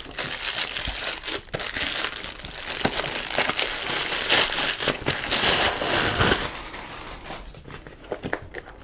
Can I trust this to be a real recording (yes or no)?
yes